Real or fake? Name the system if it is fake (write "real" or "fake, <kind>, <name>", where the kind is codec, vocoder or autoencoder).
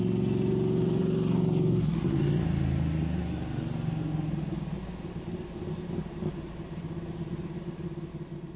real